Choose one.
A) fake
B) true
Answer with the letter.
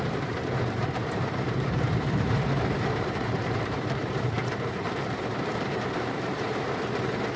A